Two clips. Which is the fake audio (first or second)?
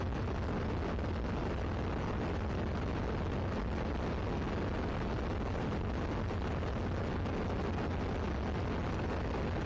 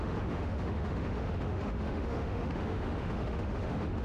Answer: second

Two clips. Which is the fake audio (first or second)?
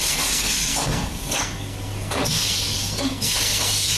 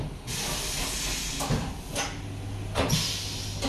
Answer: first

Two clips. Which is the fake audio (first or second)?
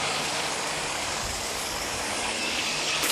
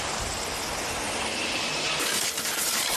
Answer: first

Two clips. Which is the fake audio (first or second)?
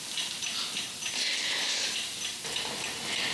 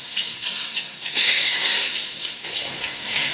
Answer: second